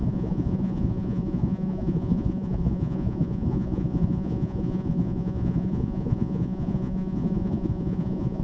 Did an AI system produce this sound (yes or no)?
yes